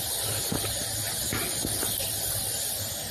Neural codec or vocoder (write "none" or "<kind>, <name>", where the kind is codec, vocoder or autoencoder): none